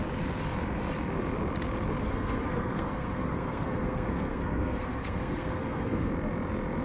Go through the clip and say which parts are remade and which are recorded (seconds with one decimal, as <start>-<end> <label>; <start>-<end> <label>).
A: 0.0-2.0 recorded; 2.0-6.1 remade; 6.1-6.8 recorded